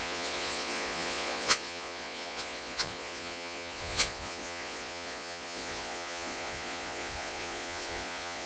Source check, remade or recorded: remade